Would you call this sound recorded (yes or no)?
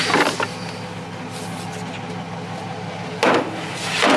yes